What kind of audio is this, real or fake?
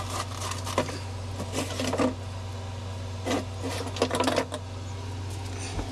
real